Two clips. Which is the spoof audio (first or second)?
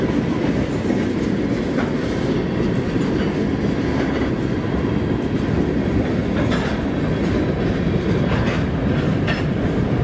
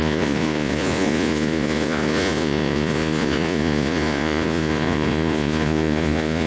second